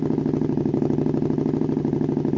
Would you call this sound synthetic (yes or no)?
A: no